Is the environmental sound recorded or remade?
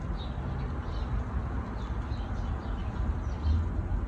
recorded